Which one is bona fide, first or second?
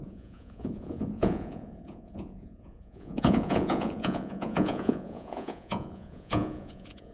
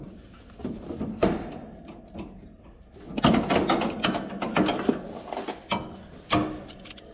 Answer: second